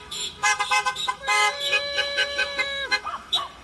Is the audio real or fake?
fake